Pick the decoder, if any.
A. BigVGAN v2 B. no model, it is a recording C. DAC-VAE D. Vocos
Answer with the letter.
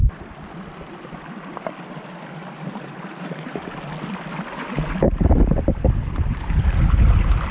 B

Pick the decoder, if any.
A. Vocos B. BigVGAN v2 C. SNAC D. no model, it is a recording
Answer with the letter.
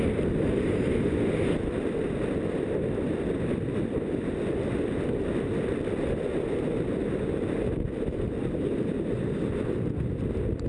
D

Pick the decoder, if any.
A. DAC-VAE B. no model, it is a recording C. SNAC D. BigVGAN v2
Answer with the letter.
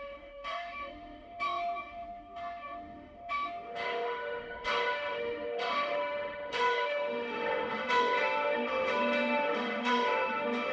A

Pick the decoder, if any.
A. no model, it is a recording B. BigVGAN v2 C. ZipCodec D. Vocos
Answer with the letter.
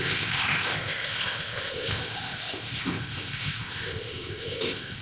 C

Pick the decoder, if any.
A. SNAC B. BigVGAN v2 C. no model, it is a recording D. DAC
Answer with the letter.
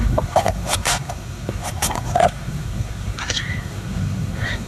A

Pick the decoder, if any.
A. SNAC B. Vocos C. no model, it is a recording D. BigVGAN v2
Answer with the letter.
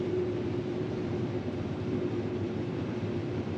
D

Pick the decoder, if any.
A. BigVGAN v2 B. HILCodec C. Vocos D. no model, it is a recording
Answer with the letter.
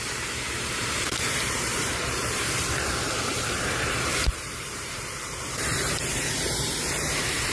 A